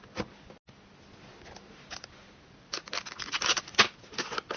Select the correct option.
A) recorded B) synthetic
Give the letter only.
A